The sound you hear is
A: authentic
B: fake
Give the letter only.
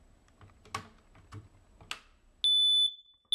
A